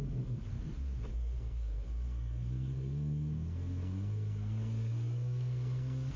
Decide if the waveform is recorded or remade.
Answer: remade